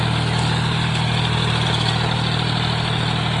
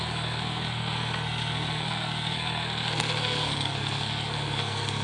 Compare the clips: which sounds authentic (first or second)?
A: first